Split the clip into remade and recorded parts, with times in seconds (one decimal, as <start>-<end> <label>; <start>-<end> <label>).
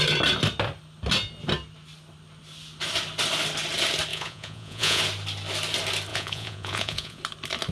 0.0-4.1 recorded; 4.1-5.0 remade; 5.0-6.1 recorded; 6.1-7.2 remade; 7.2-7.7 recorded